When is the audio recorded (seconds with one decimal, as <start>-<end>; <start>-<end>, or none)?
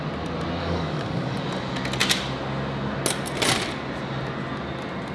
0.0-0.6; 1.4-5.1